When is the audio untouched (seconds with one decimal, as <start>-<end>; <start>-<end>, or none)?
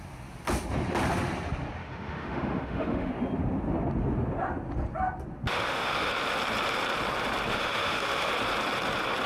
0.0-1.8; 3.1-5.5; 6.1-7.5; 8.3-9.3